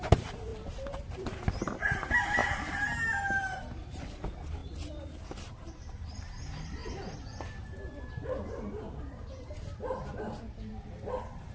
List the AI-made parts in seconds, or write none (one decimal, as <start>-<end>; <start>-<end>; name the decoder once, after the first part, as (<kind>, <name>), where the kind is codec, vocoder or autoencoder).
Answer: 0.0-4.6 (vocoder, BigVGAN v2); 5.7-6.8; 8.5-11.5